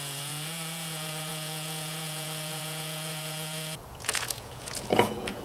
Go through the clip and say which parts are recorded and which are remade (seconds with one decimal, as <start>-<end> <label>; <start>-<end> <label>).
0.0-5.4 remade